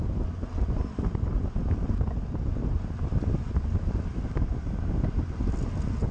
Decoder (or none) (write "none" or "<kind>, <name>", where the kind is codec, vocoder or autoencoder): none